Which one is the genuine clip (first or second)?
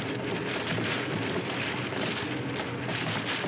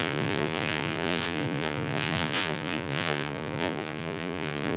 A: first